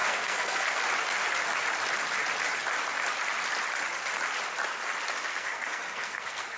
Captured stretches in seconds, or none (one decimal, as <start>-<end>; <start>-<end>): 0.8-5.3